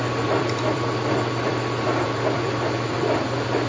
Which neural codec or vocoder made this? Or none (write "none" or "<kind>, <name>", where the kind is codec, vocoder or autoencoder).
vocoder, BigVGAN v2